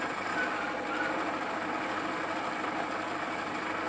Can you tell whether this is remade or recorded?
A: recorded